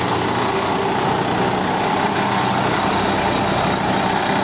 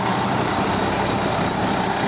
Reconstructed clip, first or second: second